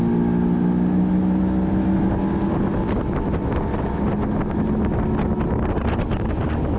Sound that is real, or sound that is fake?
real